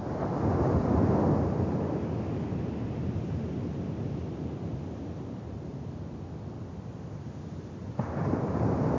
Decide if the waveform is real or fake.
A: real